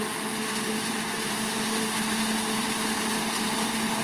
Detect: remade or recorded recorded